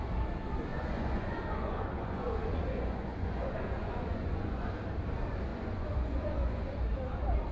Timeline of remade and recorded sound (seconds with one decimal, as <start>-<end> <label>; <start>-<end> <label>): 0.0-0.7 recorded; 0.7-4.7 remade; 4.7-5.5 recorded; 5.5-6.8 remade; 6.8-7.5 recorded